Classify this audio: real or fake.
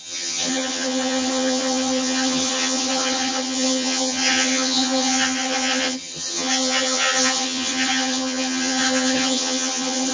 fake